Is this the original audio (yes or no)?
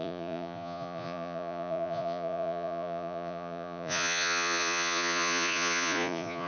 no